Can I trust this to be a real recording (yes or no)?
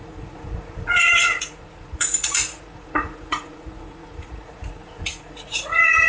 no